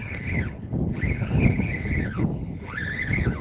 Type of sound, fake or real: fake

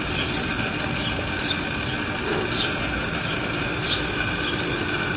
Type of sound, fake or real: real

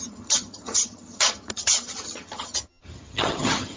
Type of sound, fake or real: fake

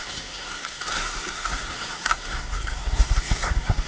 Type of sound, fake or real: fake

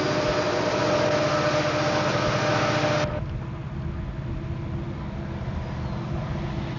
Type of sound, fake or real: real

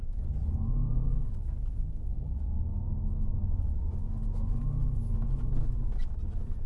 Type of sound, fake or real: real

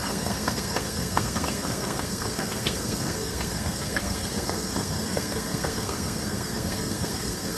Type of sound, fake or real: fake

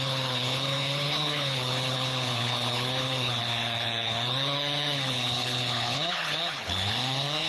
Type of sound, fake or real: fake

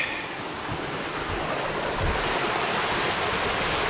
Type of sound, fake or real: real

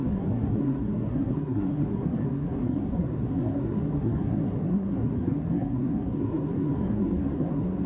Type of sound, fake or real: fake